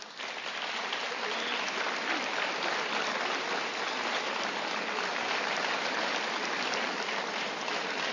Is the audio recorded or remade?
recorded